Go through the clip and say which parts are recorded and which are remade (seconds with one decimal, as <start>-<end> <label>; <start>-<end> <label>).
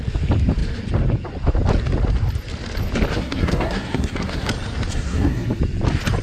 0.0-3.1 recorded; 3.1-4.5 remade; 4.5-4.9 recorded; 4.9-5.6 remade; 5.6-6.2 recorded